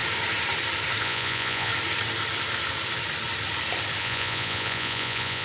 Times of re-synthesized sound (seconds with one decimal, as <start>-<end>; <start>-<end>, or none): 1.0-1.7; 4.0-5.4